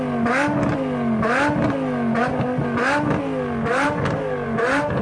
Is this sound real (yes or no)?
yes